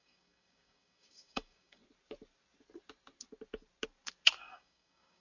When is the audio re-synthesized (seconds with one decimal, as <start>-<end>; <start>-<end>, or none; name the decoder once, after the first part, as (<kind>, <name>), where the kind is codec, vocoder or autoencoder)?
0.0-1.8 (codec, DAC); 4.4-5.2